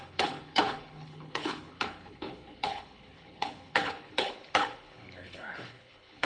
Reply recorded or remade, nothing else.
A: remade